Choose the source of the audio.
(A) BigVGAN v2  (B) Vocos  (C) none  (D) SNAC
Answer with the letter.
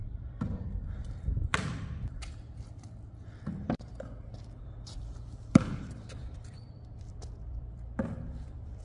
A